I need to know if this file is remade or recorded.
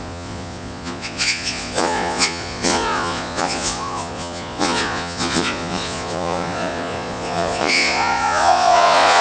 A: remade